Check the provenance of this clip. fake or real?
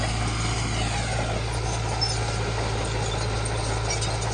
real